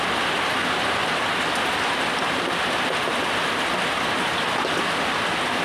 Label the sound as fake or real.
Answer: real